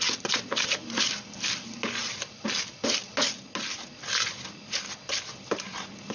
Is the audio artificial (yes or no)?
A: no